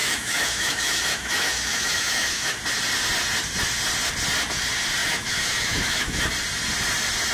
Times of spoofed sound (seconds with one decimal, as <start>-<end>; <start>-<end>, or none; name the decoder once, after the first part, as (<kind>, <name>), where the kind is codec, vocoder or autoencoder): 0.0-2.6 (autoencoder, DAC-VAE); 5.0-6.2